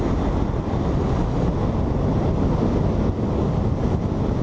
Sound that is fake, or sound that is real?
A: real